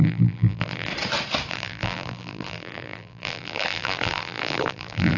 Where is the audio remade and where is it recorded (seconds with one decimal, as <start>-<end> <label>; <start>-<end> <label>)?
0.0-0.9 remade; 0.9-1.5 recorded; 1.5-5.2 remade